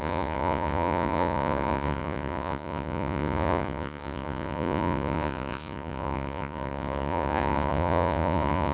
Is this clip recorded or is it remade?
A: remade